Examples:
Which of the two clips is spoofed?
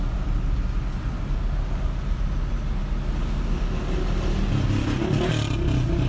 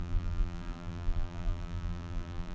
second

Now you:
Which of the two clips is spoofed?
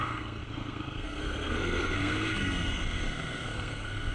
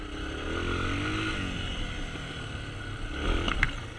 first